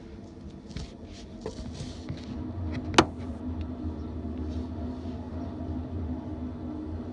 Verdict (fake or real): real